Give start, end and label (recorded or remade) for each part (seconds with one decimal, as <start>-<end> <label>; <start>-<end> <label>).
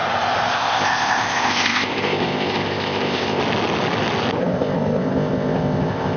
0.0-0.5 recorded; 0.5-3.4 remade; 3.4-4.4 recorded; 4.4-6.2 remade